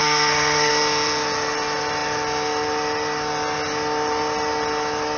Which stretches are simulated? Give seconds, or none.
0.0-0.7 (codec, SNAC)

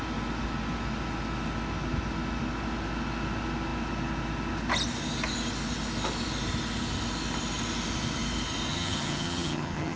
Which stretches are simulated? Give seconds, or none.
8.7-10.0 (vocoder, HiFi-GAN)

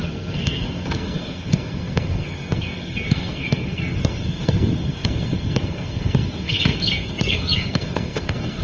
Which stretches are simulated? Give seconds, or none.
0.0-8.6 (codec, SNAC)

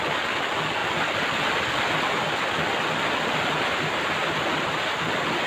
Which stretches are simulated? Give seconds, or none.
none

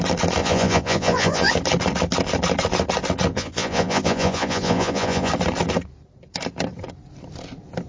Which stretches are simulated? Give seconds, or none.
0.4-1.5 (vocoder, Vocos); 3.3-5.3